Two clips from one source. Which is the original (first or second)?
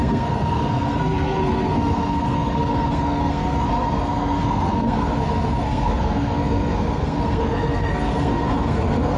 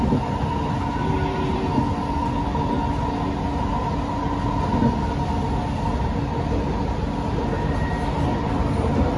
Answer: second